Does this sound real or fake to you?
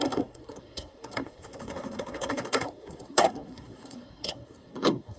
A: fake